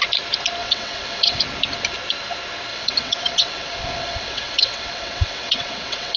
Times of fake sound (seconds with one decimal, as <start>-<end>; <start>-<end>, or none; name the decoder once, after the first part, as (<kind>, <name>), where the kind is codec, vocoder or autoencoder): 0.6-1.4 (vocoder, WaveNeXt); 2.7-6.2